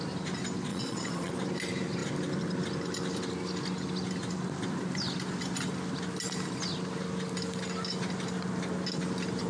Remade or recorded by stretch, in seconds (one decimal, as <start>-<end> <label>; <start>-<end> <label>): 0.0-0.7 recorded; 0.7-1.3 remade; 1.3-9.5 recorded